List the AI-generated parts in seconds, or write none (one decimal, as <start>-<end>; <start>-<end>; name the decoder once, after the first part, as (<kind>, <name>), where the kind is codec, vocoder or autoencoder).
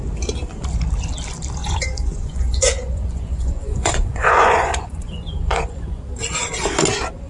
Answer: 1.6-6.0 (vocoder, Vocos)